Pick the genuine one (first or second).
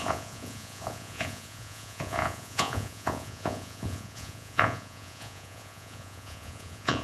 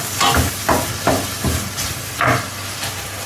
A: second